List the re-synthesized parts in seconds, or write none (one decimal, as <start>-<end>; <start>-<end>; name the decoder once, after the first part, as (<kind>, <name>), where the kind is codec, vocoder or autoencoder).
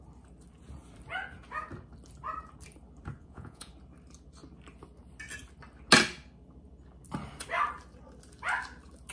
3.2-3.7 (vocoder, Vocos)